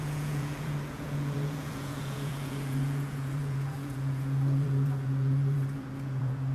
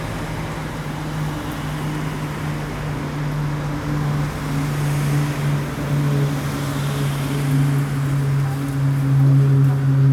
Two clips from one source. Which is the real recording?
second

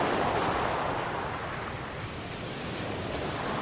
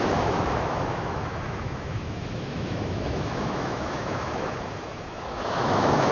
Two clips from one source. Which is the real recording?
first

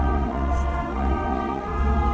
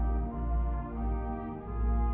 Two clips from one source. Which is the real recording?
second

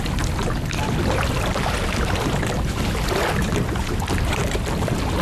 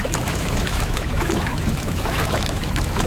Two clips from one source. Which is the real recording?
first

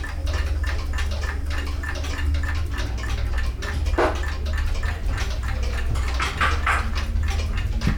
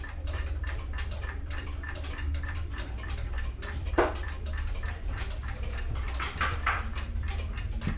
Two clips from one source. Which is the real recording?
first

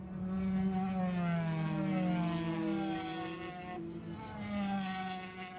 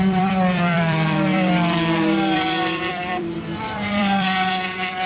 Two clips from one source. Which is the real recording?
first